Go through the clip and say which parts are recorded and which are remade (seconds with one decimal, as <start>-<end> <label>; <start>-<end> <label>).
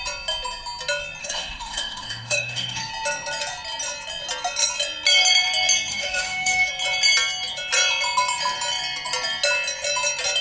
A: 0.0-1.2 recorded; 1.2-2.9 remade; 2.9-5.9 recorded; 5.9-6.7 remade; 6.7-10.4 recorded